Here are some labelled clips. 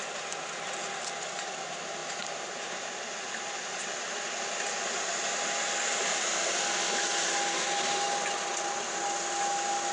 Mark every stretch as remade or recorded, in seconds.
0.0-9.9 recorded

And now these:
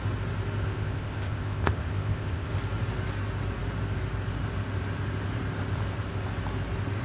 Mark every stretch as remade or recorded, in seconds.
0.0-0.6 recorded; 0.6-2.5 remade; 2.5-7.0 recorded

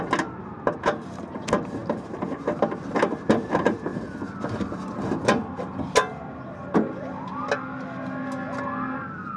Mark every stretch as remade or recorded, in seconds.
0.0-9.4 recorded

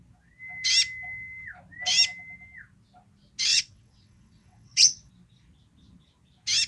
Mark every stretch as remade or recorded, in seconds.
0.0-3.5 recorded; 3.5-5.1 remade; 5.1-6.7 recorded

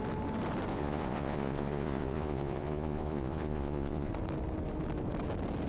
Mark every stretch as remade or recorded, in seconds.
0.0-0.7 recorded; 0.7-4.1 remade; 4.1-5.7 recorded

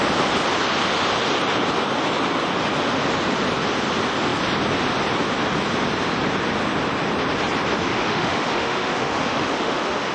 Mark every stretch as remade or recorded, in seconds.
0.0-7.9 recorded; 7.9-10.1 remade

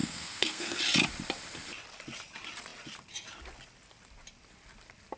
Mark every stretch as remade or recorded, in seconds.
0.0-0.8 remade; 0.8-5.2 recorded